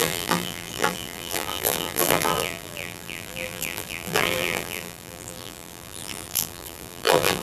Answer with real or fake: fake